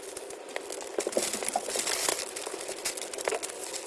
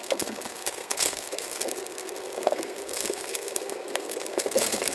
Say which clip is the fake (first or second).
second